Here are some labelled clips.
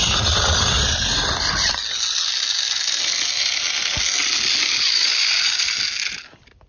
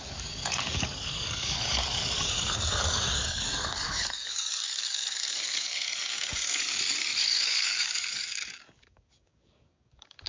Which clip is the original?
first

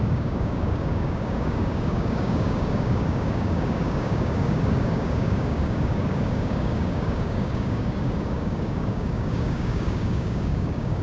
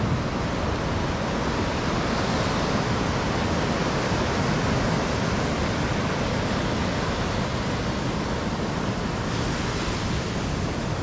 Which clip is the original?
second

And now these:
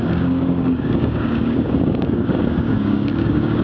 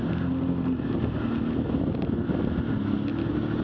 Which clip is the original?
second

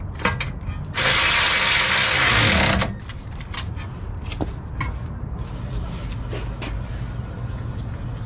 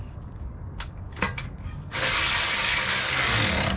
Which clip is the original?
first